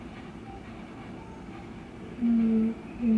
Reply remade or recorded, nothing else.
recorded